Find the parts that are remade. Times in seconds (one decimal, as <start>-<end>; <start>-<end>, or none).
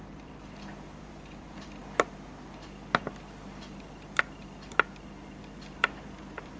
0.0-1.8; 5.8-6.6